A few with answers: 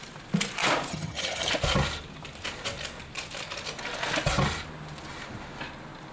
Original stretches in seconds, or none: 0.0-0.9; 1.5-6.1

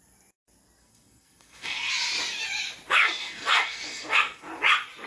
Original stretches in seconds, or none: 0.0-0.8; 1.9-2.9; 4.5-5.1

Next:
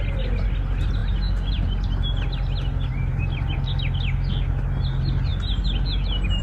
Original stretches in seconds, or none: 0.0-6.4